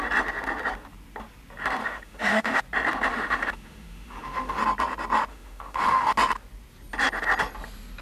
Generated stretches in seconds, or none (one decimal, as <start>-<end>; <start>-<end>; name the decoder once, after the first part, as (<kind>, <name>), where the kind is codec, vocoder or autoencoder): 1.8-2.6 (autoencoder, DAC-VAE); 3.1-4.6; 5.3-6.1